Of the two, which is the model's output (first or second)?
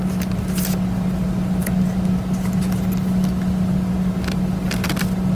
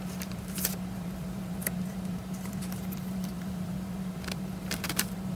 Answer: second